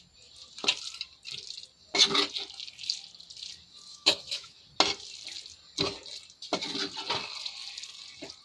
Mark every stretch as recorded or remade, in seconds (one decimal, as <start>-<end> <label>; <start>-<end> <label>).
0.0-3.9 recorded; 3.9-4.6 remade; 4.6-8.4 recorded